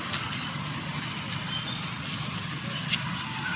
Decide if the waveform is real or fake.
real